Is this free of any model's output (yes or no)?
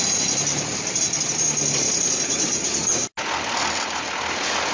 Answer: yes